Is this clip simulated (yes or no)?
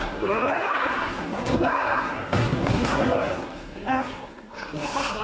yes